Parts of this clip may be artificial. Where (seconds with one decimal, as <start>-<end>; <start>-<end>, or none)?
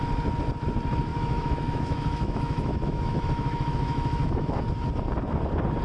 1.1-4.6